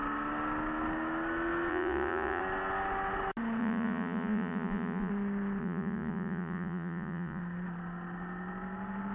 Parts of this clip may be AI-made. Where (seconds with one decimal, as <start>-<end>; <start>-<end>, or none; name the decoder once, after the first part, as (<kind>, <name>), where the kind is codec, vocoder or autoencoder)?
1.7-2.4 (vocoder, Vocos); 3.6-5.1; 5.6-7.4

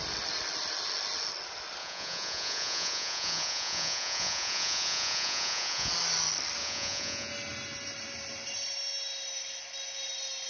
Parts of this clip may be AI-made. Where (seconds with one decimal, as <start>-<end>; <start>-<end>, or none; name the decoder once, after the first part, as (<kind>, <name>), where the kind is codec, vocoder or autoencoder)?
1.8-5.9 (vocoder, Vocos); 6.6-7.3

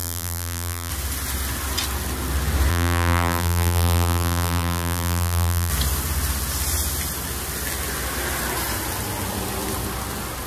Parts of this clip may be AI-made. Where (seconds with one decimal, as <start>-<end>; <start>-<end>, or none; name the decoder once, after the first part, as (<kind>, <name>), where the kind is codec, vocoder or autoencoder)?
0.0-0.9 (vocoder, BigVGAN v2); 2.7-5.7

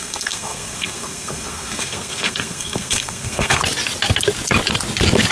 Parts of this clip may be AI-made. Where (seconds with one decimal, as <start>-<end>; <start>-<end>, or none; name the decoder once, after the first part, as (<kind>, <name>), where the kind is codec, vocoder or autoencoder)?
0.0-3.6 (codec, SNAC)

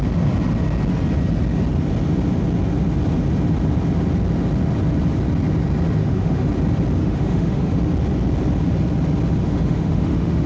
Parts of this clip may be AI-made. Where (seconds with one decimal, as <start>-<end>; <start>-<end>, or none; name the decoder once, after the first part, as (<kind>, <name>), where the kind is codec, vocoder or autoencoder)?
6.0-6.5 (autoencoder, DAC-VAE); 7.0-7.8; 9.4-10.5